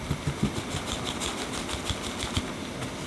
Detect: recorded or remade recorded